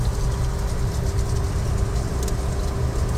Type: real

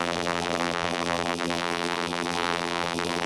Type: fake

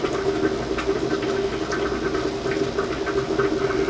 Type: real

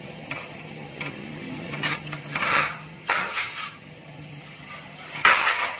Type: fake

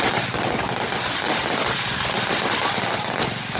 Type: real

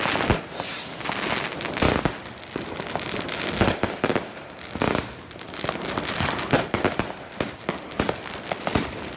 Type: real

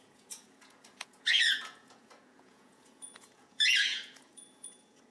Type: fake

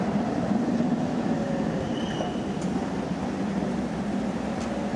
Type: real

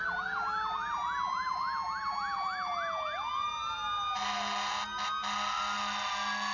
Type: real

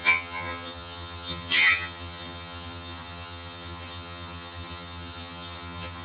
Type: fake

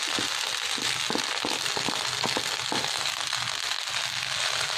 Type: real